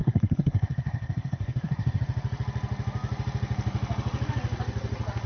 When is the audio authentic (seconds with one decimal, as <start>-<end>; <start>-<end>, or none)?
2.0-5.3